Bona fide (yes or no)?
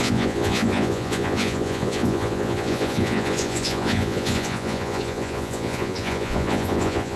no